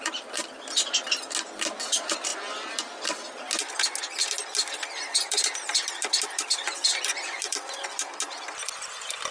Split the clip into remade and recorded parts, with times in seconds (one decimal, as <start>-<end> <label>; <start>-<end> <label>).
0.0-9.3 recorded